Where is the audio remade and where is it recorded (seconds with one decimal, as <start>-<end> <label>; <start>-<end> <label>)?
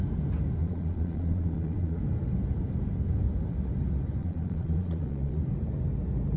0.0-0.6 recorded; 0.6-2.0 remade; 2.0-4.2 recorded; 4.2-5.4 remade; 5.4-6.4 recorded